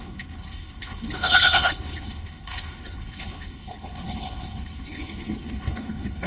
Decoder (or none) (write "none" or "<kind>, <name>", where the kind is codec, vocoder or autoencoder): codec, HILCodec